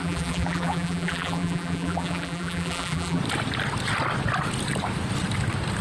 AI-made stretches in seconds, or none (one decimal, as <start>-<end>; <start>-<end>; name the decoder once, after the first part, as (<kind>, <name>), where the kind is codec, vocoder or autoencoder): 0.0-3.2 (vocoder, BigVGAN v2)